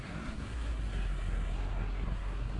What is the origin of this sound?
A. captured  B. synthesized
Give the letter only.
B